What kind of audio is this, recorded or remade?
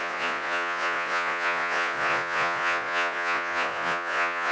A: remade